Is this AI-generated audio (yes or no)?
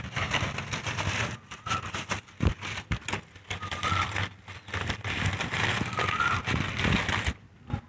no